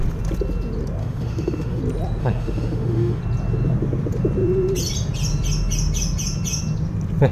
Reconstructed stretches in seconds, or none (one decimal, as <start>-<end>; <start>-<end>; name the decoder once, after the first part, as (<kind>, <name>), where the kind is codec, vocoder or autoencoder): 1.0-1.8 (autoencoder, DAC-VAE); 2.2-3.2